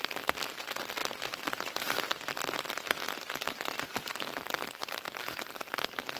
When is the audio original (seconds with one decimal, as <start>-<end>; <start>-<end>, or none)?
0.0-1.0; 1.9-4.8; 5.4-6.2